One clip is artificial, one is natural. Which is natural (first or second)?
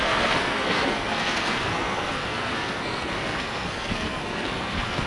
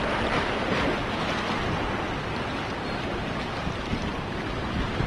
second